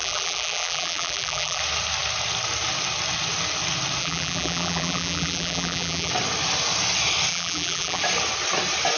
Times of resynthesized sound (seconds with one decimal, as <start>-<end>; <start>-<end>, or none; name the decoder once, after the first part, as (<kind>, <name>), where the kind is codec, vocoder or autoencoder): 0.0-1.6 (vocoder, BigVGAN v2); 4.0-6.1; 7.3-8.0